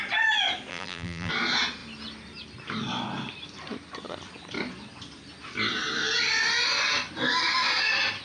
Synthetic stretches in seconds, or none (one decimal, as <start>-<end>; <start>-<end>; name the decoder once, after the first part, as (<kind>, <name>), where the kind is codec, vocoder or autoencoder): 0.7-1.3 (vocoder, BigVGAN v2)